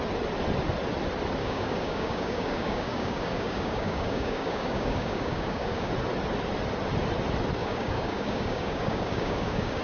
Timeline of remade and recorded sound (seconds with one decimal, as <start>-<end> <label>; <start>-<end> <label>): 0.0-1.4 recorded; 1.4-5.9 remade; 5.9-7.6 recorded; 7.6-9.8 remade